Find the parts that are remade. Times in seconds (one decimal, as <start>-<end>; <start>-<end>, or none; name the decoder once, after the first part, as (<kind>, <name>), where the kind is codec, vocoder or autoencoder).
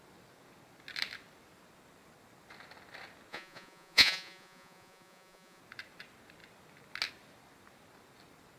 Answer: 3.3-5.6 (vocoder, Vocos)